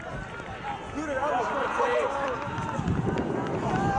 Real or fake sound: fake